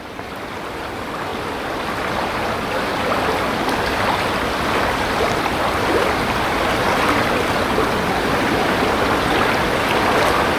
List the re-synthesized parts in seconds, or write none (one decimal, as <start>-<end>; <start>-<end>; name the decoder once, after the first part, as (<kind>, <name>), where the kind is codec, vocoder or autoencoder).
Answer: none